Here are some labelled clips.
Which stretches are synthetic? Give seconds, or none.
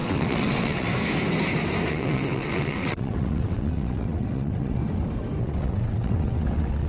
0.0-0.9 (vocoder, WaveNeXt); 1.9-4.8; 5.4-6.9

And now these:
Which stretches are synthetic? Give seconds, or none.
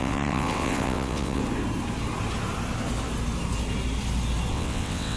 0.0-1.4 (vocoder, WaveNeXt); 4.5-5.2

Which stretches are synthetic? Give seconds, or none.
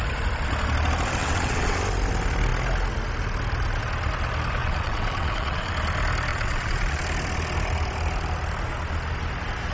1.2-1.8 (vocoder, WaveNeXt); 4.6-5.7; 6.3-7.0